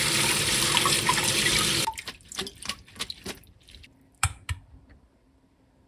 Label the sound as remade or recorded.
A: remade